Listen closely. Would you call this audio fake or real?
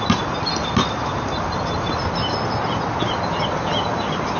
real